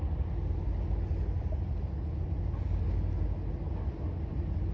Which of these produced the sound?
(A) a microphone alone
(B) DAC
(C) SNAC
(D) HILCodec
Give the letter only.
A